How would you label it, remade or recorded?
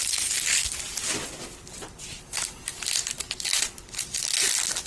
recorded